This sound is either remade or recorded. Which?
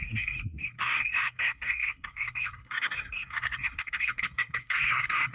remade